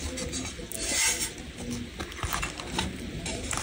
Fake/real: real